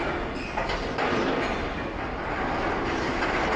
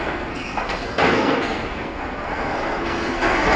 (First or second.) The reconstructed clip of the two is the second